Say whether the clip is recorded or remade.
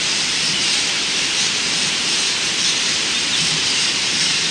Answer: remade